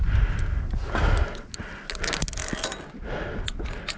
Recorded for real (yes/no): yes